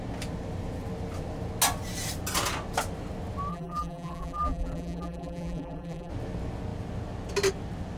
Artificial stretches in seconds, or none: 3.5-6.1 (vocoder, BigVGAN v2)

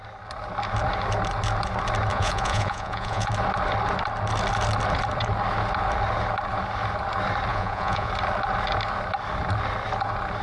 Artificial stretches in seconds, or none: 2.1-3.3 (vocoder, Vocos); 7.5-8.1

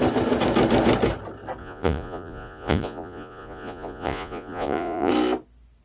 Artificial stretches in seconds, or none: 1.6-5.1 (vocoder, Vocos)

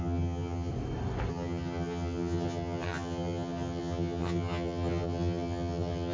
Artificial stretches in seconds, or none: 0.0-0.7 (vocoder, HiFi-GAN); 1.3-6.1

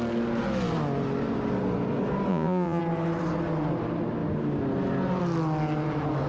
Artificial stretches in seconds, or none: 2.3-2.8 (vocoder, Vocos)

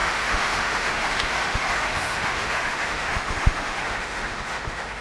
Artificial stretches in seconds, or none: 0.0-5.0 (autoencoder, DAC-VAE)

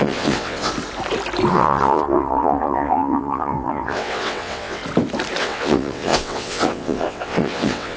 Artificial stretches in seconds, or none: 0.0-0.7 (vocoder, WaveNeXt); 1.5-4.8; 5.4-8.0